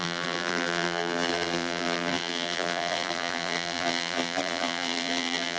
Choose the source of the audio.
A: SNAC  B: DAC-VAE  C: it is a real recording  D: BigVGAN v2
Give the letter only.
D